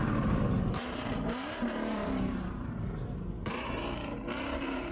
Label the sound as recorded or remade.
remade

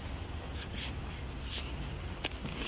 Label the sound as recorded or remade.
recorded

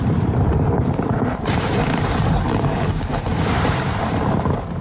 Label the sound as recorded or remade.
remade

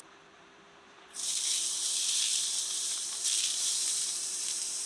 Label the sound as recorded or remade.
remade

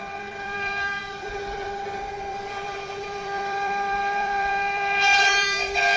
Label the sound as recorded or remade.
remade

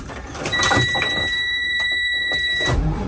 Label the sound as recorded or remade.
remade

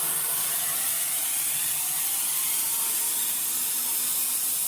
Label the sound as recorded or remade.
remade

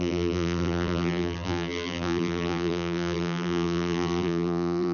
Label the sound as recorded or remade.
remade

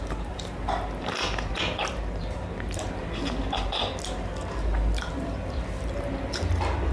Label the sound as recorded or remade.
remade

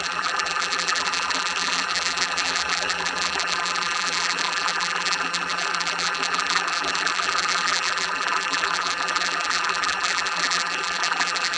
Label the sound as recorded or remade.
remade